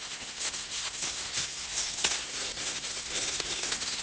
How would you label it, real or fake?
fake